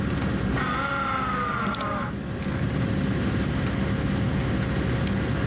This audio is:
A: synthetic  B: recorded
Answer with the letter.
B